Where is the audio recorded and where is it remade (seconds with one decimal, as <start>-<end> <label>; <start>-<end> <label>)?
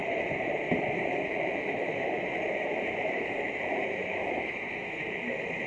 0.0-5.7 remade